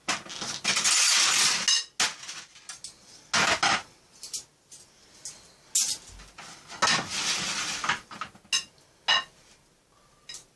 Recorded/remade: recorded